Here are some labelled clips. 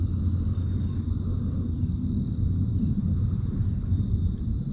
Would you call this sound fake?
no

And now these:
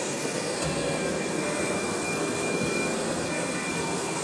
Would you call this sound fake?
yes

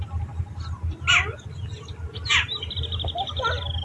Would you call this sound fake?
no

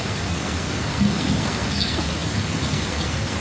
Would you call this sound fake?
yes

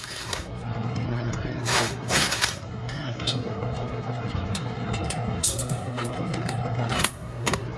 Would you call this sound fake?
yes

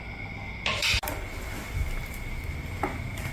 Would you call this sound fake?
no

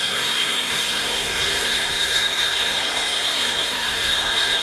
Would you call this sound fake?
yes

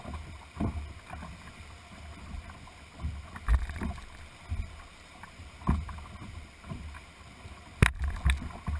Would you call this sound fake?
no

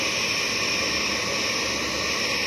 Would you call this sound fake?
no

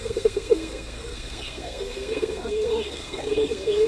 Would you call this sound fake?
yes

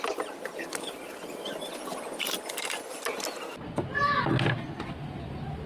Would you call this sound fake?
no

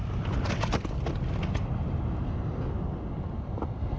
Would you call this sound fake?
no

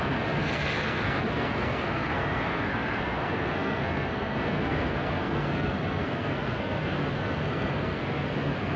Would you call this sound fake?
yes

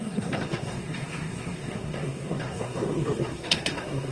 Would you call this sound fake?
yes